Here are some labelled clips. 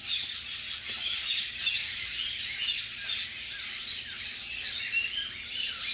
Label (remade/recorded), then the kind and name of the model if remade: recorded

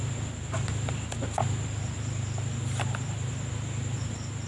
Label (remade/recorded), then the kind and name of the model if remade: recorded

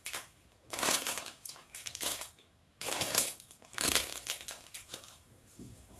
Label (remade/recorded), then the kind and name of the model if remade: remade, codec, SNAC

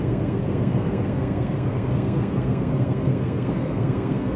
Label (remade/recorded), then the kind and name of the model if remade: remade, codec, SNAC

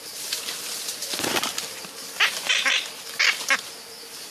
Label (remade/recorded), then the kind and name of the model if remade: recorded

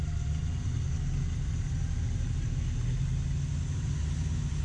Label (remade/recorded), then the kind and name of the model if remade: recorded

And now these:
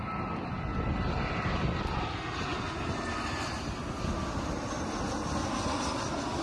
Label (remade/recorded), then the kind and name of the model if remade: recorded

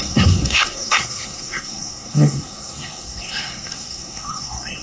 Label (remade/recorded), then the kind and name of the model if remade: remade, codec, SNAC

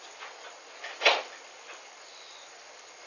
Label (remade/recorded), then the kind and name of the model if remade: recorded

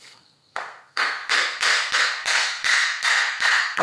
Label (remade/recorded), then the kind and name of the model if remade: remade, codec, SNAC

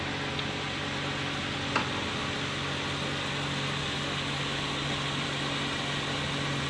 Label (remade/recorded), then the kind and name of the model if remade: recorded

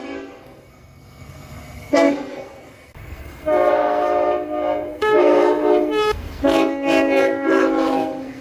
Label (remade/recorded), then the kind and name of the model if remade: remade, codec, SNAC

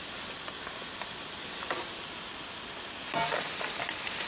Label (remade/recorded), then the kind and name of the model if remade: recorded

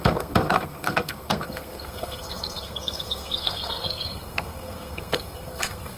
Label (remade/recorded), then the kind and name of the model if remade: remade, codec, SNAC